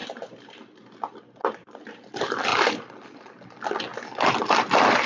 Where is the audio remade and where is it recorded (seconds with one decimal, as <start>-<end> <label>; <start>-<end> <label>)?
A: 0.0-5.1 recorded